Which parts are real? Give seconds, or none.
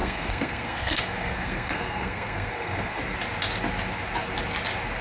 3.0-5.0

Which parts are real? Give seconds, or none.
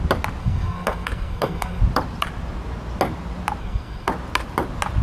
0.0-0.4; 1.8-3.6; 4.1-5.0